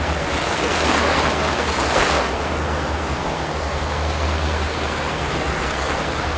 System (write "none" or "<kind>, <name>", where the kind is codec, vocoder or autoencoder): codec, SNAC